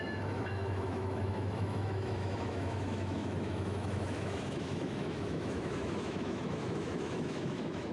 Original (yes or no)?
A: no